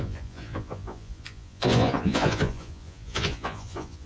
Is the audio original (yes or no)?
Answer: no